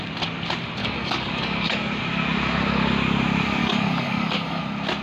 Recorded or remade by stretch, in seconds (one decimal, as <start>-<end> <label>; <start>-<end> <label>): 0.0-0.8 recorded; 0.8-2.0 remade; 2.0-3.6 recorded; 3.6-4.6 remade; 4.6-5.0 recorded